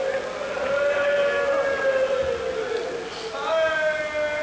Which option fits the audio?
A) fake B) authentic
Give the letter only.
B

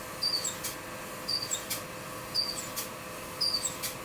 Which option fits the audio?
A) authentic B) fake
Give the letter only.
A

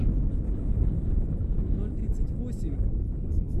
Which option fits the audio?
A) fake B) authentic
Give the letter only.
A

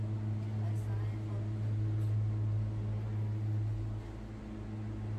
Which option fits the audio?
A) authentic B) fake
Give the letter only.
A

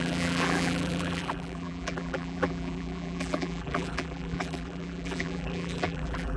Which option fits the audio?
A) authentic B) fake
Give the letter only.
B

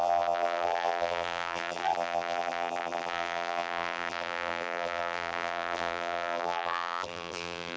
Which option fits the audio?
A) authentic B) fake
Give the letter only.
B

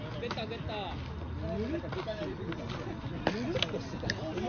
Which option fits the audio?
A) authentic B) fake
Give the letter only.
A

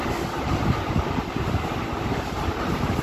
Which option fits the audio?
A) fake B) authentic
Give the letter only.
B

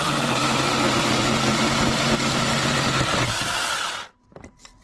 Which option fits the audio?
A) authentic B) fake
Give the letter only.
B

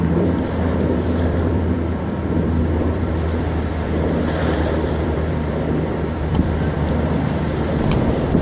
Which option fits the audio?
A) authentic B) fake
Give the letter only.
B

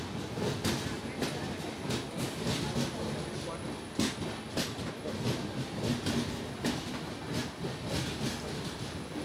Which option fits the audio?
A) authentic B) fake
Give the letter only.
A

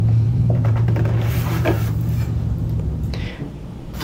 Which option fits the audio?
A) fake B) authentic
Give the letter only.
A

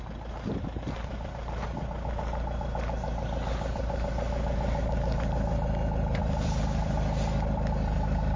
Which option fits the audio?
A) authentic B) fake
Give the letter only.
B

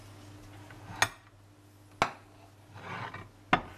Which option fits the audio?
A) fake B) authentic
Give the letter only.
B